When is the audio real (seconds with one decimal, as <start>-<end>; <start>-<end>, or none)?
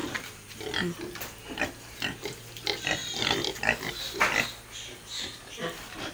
0.0-6.1